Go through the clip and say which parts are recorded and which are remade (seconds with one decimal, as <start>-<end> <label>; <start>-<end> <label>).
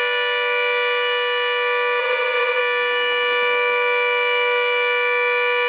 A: 0.0-2.0 recorded; 2.0-2.6 remade; 2.6-5.7 recorded